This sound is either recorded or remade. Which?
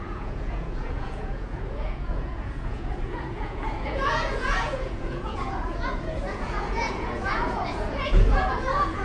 remade